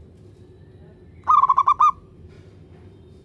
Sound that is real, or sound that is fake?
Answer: real